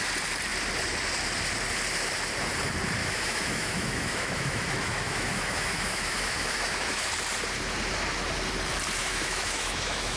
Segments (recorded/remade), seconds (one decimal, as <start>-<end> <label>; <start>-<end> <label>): 0.0-3.0 recorded; 3.0-7.1 remade; 7.1-9.0 recorded; 9.0-10.2 remade

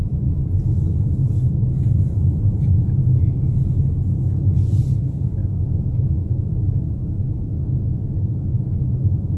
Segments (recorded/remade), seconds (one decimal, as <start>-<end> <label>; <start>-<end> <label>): 0.0-0.4 remade; 0.4-5.0 recorded; 5.0-7.2 remade; 7.2-8.8 recorded; 8.8-9.4 remade

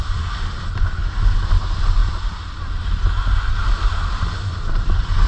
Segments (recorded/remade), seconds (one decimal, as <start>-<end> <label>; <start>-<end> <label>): 0.0-5.3 recorded

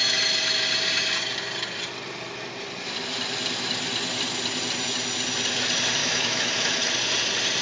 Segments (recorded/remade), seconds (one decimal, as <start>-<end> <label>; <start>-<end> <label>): 0.0-6.0 recorded; 6.0-6.8 remade; 6.8-7.6 recorded

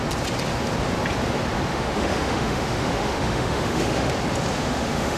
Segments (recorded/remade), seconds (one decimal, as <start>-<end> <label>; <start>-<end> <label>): 0.0-1.7 recorded; 1.7-4.1 remade; 4.1-4.6 recorded; 4.6-5.2 remade

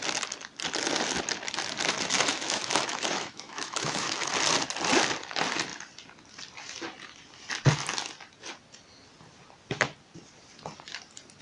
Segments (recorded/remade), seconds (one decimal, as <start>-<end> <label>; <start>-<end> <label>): 0.0-2.3 recorded; 2.3-4.3 remade; 4.3-11.4 recorded